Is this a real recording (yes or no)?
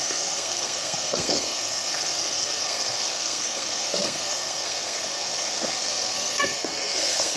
no